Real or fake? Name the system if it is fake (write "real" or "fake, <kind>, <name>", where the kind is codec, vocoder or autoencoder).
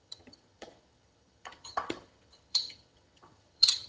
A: fake, vocoder, HiFi-GAN